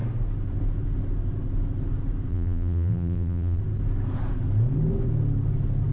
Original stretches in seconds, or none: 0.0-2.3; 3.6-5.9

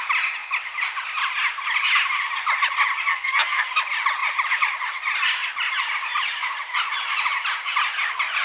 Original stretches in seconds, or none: 0.0-3.1; 3.7-8.4

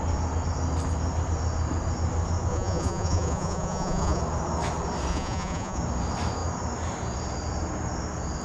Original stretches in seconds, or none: 0.0-2.5; 4.2-5.1; 5.8-8.4

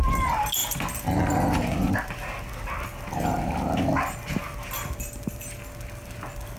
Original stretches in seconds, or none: 0.0-6.6

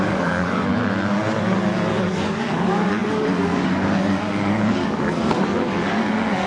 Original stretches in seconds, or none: 0.7-2.0